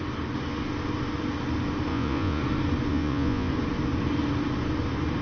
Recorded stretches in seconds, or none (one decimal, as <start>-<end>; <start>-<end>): 0.0-1.9; 2.4-2.9; 3.5-5.2